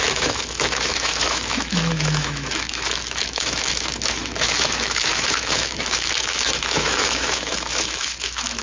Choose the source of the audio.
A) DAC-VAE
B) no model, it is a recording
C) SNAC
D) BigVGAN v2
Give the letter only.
A